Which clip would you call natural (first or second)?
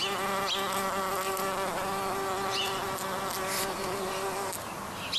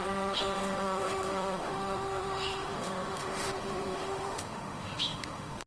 first